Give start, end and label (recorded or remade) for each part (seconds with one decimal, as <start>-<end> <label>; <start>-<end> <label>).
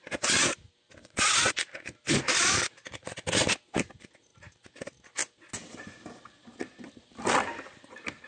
0.0-1.0 recorded; 1.0-1.5 remade; 1.5-8.3 recorded